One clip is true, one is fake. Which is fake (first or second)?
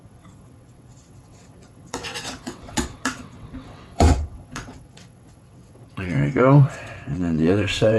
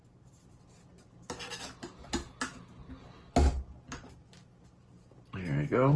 first